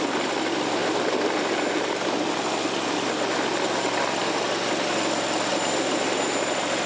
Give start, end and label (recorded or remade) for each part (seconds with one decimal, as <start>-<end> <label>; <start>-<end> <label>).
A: 0.0-0.8 remade; 0.8-1.8 recorded; 1.8-4.2 remade; 4.2-4.7 recorded; 4.7-5.5 remade; 5.5-6.9 recorded